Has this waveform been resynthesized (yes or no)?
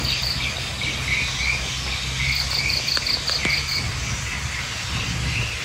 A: no